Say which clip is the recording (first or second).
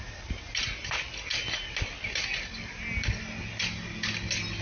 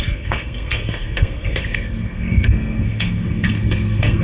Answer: first